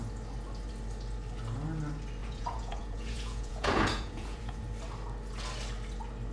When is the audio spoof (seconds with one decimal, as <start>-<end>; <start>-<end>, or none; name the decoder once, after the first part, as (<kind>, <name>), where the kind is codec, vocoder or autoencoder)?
2.2-4.6 (vocoder, Vocos)